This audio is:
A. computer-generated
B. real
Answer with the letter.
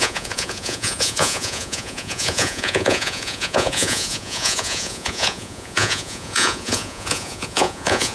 A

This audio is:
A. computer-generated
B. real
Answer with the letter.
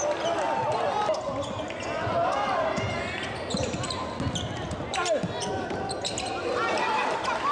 B